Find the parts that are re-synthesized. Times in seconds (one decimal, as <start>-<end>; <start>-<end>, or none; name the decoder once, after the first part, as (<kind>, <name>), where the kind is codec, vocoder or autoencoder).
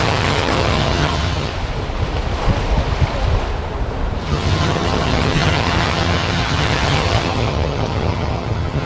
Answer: 0.0-1.5 (vocoder, HiFi-GAN); 4.3-8.9